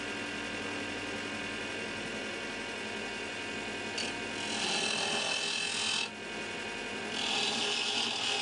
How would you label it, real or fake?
real